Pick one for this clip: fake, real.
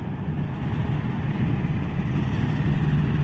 real